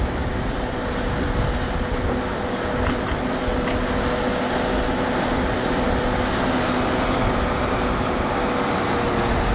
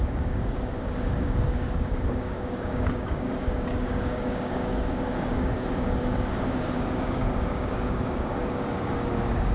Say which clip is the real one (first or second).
first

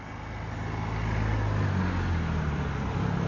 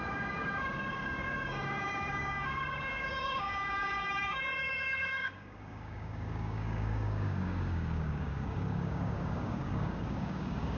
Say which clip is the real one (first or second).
first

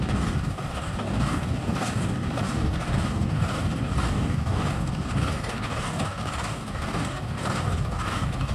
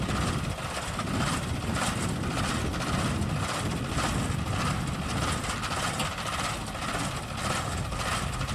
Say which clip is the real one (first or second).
second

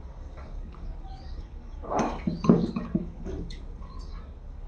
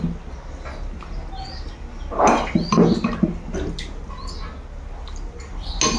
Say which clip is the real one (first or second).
second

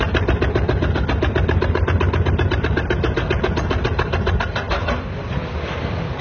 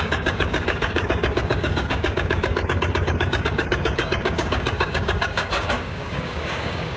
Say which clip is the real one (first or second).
first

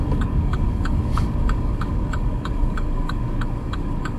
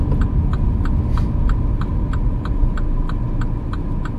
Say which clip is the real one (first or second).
second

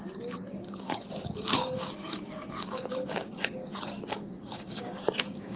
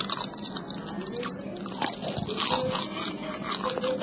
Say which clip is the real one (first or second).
second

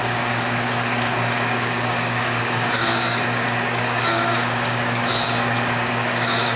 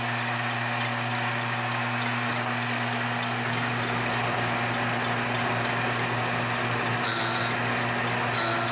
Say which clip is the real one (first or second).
second